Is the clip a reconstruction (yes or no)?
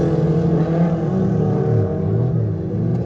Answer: no